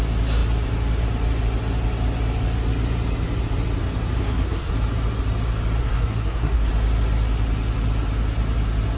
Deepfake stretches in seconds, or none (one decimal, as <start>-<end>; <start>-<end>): 4.2-4.7; 5.8-6.7